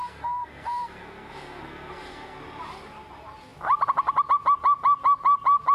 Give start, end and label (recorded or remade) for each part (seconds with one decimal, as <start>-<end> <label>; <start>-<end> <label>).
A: 0.0-2.4 remade; 2.4-5.7 recorded